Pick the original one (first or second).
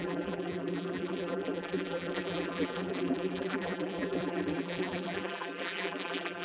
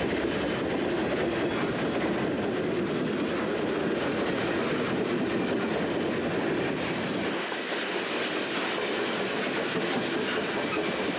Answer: second